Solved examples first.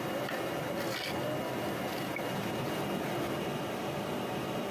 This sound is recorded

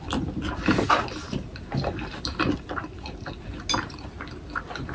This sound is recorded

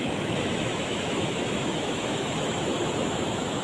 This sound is remade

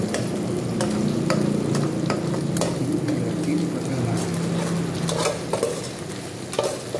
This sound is recorded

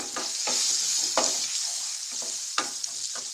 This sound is recorded